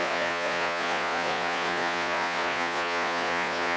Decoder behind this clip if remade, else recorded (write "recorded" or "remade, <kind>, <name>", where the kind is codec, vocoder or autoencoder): remade, vocoder, Vocos